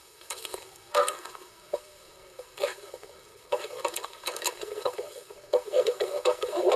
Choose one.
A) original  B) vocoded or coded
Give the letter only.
B